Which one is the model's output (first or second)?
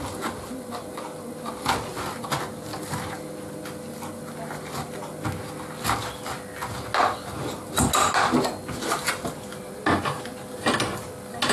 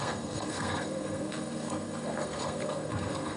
second